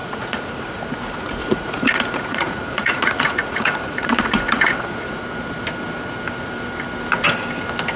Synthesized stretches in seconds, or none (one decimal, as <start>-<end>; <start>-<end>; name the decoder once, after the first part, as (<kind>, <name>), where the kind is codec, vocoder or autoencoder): 0.0-0.8 (vocoder, Vocos); 1.4-5.2